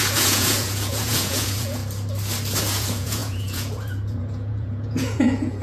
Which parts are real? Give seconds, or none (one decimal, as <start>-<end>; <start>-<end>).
1.8-2.6

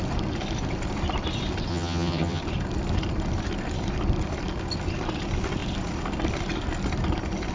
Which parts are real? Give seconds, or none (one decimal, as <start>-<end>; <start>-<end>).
0.0-1.7; 2.4-7.5

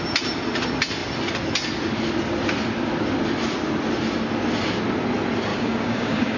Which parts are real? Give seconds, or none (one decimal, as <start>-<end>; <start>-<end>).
0.0-5.5

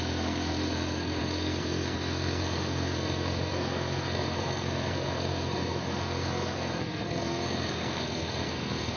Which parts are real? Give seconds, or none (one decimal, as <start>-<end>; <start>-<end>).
none